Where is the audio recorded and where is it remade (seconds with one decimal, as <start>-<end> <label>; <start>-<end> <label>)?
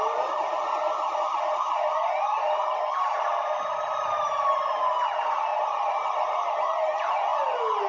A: 0.0-7.9 recorded